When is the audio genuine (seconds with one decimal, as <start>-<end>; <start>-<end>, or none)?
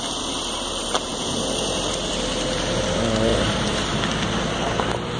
0.0-3.3; 4.0-5.2